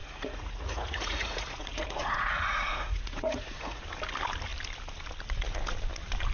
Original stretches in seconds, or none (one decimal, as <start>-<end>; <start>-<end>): 3.8-6.3